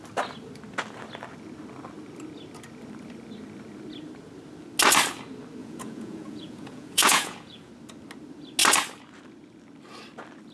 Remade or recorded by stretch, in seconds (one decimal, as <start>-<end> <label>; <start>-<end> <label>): 0.0-5.6 recorded; 5.6-7.7 remade; 7.7-10.5 recorded